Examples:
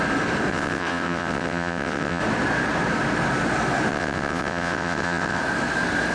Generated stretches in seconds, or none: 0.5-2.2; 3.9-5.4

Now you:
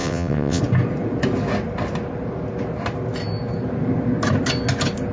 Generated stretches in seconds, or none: 0.0-0.6